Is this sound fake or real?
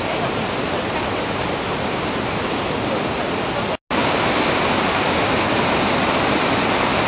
real